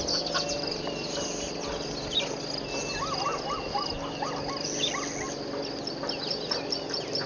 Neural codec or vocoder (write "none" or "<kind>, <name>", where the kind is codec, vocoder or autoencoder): none